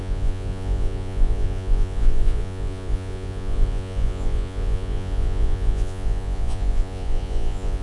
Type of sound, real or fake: fake